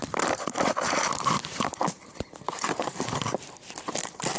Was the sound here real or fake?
fake